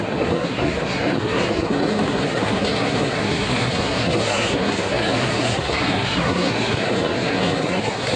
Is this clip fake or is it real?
fake